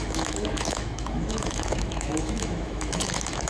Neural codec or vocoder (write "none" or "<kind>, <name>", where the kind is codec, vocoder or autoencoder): autoencoder, DAC-VAE